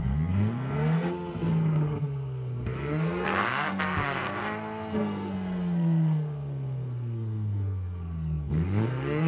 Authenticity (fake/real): fake